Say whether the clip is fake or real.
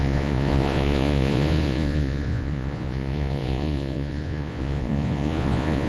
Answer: fake